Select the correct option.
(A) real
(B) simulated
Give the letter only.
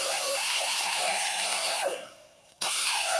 B